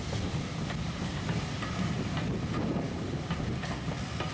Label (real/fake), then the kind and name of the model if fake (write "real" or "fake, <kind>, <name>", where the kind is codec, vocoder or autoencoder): real